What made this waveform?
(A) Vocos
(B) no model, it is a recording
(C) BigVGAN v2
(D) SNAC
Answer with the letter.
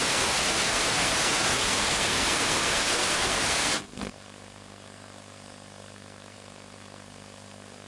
D